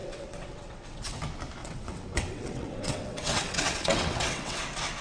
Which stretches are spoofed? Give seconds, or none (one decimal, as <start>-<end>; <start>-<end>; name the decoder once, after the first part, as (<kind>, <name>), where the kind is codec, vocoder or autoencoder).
0.0-1.2 (vocoder, WaveNeXt); 1.6-4.6